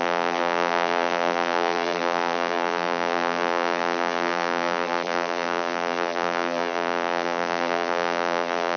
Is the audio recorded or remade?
remade